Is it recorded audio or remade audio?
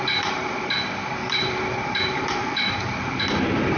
remade